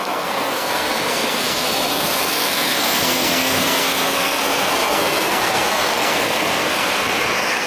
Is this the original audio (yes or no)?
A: no